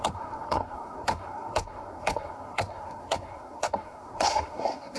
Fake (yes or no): yes